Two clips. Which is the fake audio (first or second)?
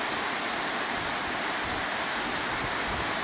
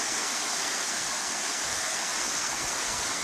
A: second